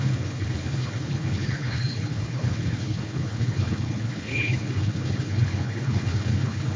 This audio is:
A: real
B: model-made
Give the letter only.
B